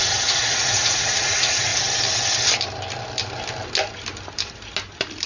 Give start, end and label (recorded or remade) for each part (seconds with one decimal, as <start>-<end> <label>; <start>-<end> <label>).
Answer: 0.0-1.7 remade; 1.7-5.3 recorded